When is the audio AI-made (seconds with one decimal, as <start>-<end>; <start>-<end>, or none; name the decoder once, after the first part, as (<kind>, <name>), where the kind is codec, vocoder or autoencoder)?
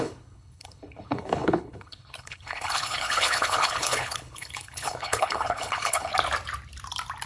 0.0-6.1 (codec, HILCodec)